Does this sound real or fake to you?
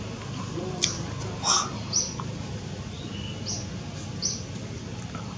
real